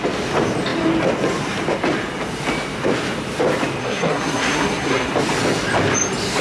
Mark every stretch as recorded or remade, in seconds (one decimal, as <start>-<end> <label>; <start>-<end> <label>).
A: 0.0-3.8 recorded; 3.8-5.1 remade; 5.1-6.4 recorded